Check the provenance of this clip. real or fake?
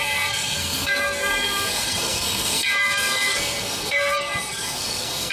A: fake